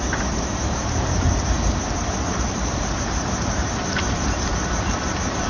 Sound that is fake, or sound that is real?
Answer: fake